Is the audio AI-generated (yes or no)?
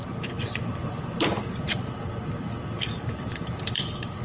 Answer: yes